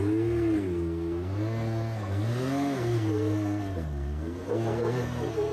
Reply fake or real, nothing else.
fake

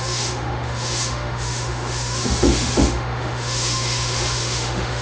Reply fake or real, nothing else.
fake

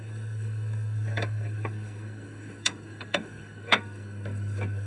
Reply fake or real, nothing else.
fake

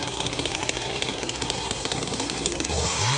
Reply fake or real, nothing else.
fake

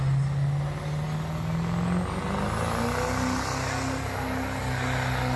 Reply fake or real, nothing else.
real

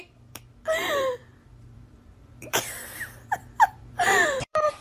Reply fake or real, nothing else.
fake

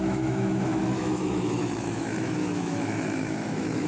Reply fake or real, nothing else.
fake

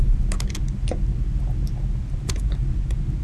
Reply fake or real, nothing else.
real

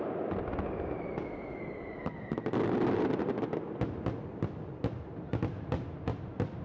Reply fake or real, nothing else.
real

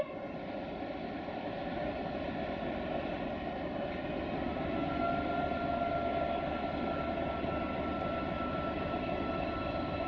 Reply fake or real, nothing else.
real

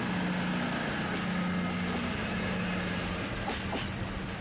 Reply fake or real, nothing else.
real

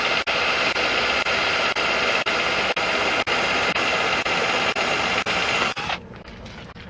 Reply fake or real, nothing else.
real